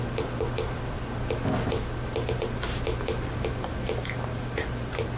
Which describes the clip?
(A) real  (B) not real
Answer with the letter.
A